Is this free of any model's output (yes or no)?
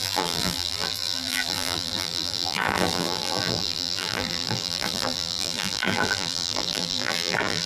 no